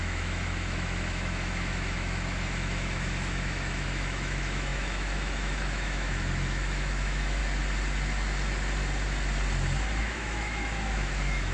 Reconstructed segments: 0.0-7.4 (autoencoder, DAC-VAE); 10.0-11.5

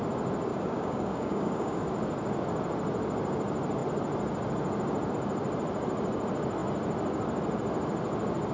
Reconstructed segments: 0.5-1.8 (codec, DAC)